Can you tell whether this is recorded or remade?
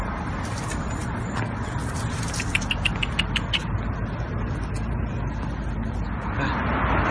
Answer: recorded